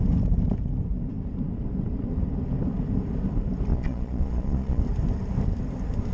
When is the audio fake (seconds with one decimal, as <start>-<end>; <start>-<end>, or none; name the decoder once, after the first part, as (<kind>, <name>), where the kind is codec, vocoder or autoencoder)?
3.7-4.8 (vocoder, Vocos)